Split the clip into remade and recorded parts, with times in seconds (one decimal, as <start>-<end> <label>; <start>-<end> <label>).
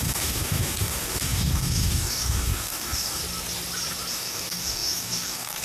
0.0-3.2 remade; 3.2-4.1 recorded; 4.1-5.6 remade